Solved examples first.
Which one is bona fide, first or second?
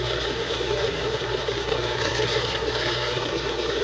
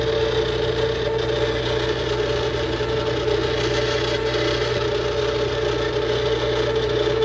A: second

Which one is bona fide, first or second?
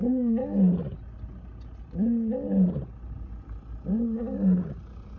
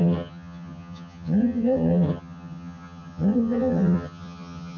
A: first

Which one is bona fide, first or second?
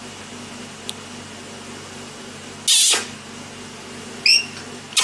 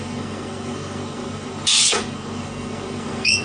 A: first